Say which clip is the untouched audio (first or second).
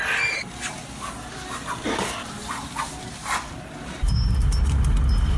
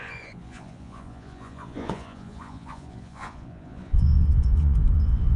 first